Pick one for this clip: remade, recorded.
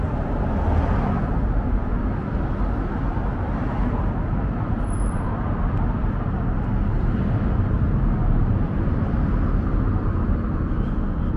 recorded